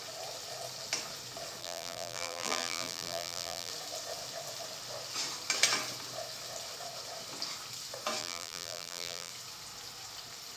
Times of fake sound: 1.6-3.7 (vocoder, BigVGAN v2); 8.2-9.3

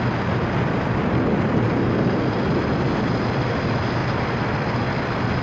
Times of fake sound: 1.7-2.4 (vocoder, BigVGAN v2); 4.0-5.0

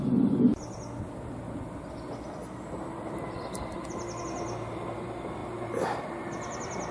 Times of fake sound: none

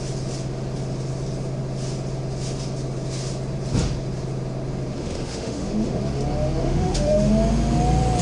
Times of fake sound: 5.0-6.0 (autoencoder, DAC-VAE); 6.6-7.3

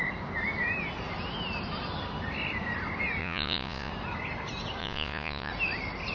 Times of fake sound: 3.2-3.9 (vocoder, Vocos); 4.8-5.5